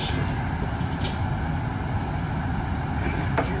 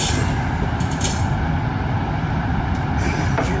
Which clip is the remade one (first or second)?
second